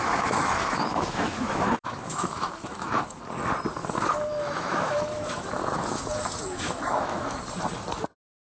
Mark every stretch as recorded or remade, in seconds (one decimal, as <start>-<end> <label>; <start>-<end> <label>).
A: 0.0-3.2 remade; 3.2-3.8 recorded; 3.8-7.4 remade; 7.4-8.5 recorded